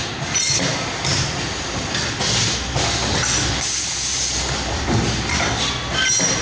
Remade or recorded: recorded